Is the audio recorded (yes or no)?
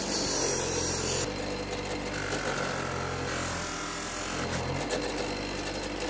yes